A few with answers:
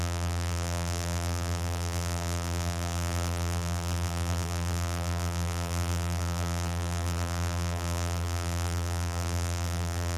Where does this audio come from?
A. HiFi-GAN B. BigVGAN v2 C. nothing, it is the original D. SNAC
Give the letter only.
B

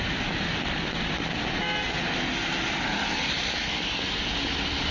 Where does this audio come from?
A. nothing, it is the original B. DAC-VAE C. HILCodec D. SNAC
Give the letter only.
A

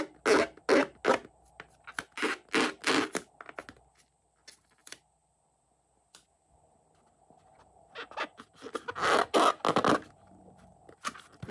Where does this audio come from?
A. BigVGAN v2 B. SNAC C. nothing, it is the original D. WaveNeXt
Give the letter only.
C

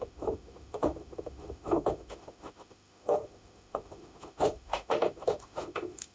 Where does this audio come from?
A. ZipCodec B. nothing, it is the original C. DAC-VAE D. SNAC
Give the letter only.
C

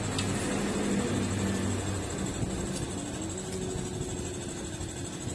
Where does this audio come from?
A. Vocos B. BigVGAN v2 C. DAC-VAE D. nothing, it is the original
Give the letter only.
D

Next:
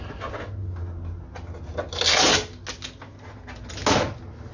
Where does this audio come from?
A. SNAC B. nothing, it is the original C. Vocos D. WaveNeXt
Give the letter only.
B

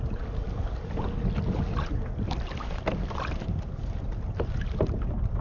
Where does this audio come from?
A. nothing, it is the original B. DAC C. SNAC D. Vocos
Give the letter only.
A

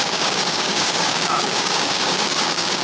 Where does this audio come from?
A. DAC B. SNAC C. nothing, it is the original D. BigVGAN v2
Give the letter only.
A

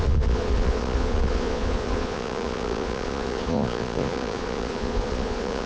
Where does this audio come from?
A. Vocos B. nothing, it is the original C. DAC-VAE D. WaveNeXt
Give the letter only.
A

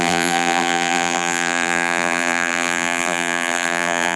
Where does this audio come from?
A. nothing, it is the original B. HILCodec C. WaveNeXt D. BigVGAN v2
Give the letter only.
D